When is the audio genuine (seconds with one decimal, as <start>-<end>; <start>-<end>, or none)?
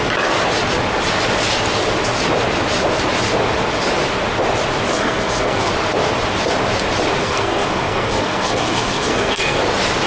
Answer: 0.0-4.9; 5.7-7.2; 9.6-10.1